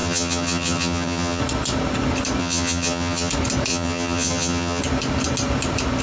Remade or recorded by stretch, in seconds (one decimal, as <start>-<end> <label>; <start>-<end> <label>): 0.0-1.4 remade; 1.4-2.4 recorded; 2.4-3.3 remade; 3.3-3.7 recorded; 3.7-4.8 remade; 4.8-6.0 recorded